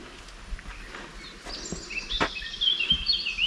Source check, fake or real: real